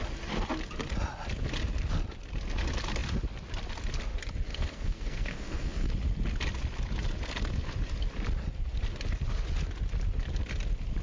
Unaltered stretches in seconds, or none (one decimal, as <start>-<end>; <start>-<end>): 0.0-4.5; 5.9-11.0